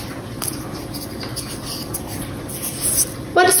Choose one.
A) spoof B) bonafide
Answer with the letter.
B